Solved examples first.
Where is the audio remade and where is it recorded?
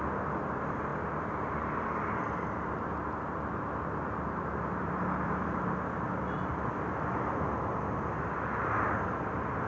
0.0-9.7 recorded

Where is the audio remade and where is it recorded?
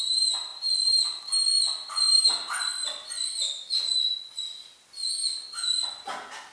0.0-6.5 recorded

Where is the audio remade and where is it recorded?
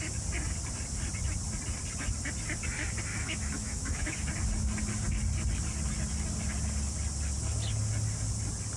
0.0-3.1 recorded; 3.1-4.3 remade; 4.3-8.8 recorded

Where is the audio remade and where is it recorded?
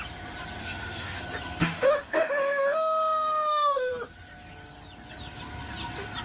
0.0-0.6 recorded; 0.6-1.2 remade; 1.2-1.6 recorded; 1.6-3.9 remade; 3.9-6.2 recorded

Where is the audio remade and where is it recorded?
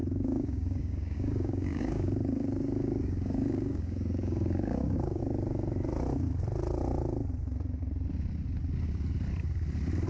0.0-5.2 remade; 5.2-10.1 recorded